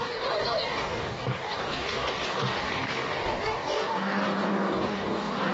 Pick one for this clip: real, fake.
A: fake